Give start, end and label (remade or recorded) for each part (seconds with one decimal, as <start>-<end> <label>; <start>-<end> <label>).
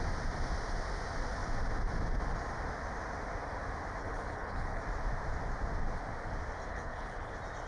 0.0-4.0 recorded; 4.0-4.8 remade; 4.8-6.7 recorded; 6.7-7.3 remade; 7.3-7.7 recorded